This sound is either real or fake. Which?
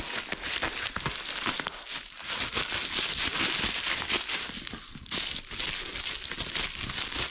real